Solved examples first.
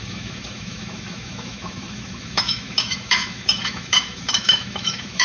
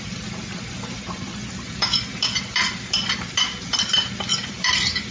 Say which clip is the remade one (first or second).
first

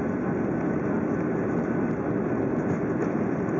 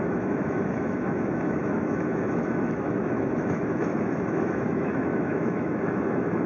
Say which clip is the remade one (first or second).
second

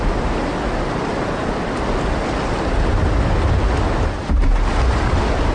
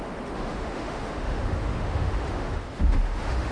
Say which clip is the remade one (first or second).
second